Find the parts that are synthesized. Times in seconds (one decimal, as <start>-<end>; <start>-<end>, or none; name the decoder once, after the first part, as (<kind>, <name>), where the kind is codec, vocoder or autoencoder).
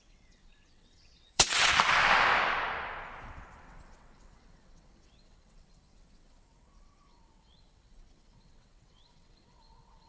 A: 0.0-1.7 (vocoder, WaveNeXt); 3.2-10.1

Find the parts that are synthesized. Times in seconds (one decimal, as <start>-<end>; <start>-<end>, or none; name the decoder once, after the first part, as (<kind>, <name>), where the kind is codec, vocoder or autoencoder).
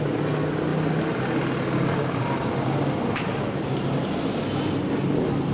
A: none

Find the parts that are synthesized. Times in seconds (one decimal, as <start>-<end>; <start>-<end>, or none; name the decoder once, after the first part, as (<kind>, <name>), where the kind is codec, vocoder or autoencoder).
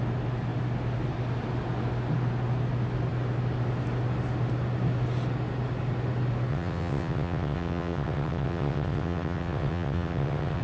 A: 6.5-10.6 (vocoder, WaveNeXt)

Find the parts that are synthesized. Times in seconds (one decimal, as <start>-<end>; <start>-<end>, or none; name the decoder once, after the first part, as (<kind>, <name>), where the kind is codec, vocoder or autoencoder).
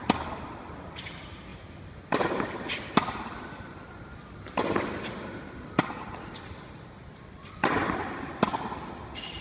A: none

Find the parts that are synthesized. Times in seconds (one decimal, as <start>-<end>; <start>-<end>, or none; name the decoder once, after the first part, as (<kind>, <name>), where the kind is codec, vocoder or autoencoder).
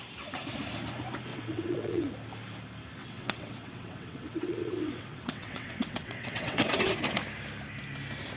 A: 1.3-2.1 (vocoder, WaveNeXt); 3.0-6.9